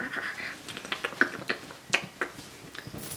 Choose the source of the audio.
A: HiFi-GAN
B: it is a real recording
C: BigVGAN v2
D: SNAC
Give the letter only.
B